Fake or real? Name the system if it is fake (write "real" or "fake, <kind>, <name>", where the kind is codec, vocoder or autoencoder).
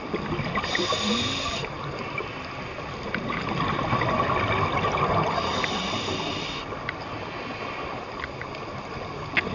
real